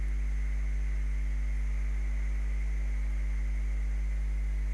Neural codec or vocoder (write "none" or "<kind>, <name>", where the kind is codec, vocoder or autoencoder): none